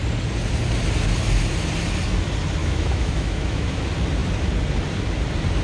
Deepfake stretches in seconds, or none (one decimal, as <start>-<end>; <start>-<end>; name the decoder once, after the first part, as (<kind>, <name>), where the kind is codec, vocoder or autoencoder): 2.6-3.8 (autoencoder, DAC-VAE)